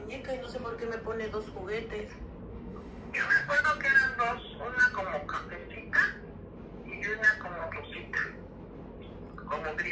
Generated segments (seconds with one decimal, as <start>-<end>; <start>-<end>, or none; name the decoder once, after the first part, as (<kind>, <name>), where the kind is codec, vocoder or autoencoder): 2.5-3.6 (autoencoder, DAC-VAE)